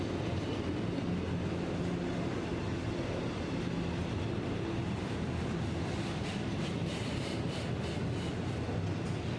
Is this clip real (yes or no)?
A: yes